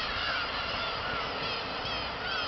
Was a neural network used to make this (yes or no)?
yes